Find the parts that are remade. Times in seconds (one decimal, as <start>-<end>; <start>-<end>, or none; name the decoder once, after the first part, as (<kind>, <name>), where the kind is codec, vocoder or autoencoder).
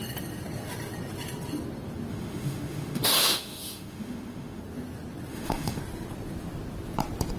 2.1-4.6 (autoencoder, DAC-VAE); 5.3-5.8